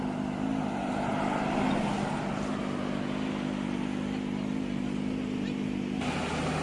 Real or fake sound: real